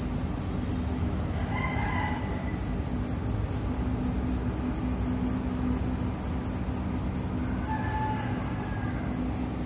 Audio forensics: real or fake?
real